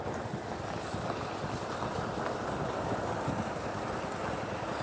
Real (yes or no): yes